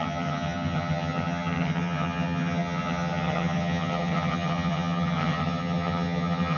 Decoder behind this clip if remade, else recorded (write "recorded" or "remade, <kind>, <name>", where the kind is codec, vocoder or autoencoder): remade, vocoder, HiFi-GAN